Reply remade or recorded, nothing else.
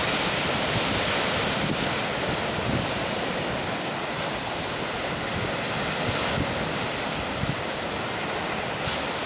recorded